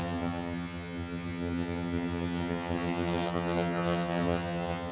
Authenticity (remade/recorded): remade